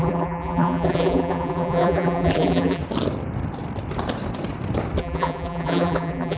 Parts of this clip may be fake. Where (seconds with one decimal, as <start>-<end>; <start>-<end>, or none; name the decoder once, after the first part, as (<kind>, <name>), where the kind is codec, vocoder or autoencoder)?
0.0-2.8 (vocoder, BigVGAN v2); 5.0-6.4